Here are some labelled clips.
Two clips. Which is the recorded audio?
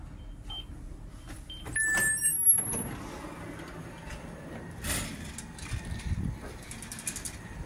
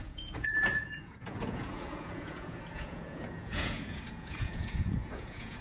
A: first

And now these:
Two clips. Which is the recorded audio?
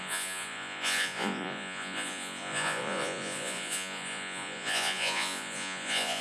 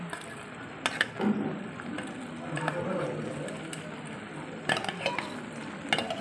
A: second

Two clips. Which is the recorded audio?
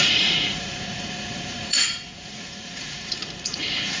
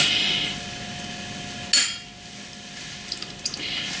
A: second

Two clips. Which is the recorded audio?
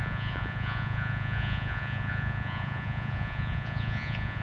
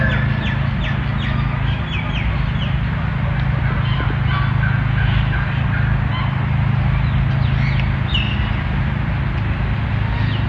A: second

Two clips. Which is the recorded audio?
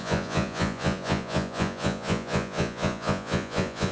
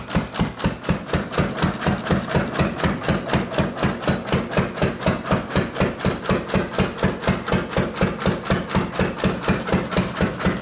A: second